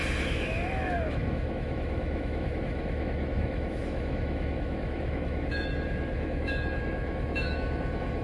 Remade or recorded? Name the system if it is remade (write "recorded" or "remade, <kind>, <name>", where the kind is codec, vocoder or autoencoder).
remade, autoencoder, DAC-VAE